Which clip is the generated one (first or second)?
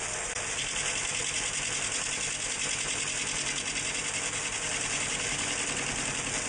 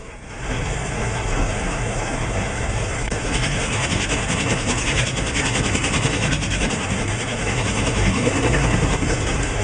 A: second